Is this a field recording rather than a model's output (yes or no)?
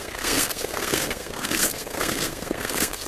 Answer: no